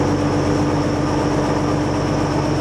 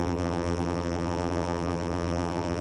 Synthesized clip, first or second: second